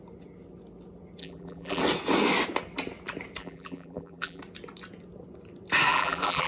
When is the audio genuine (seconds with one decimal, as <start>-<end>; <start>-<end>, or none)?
0.0-1.2; 1.8-3.4; 4.4-5.9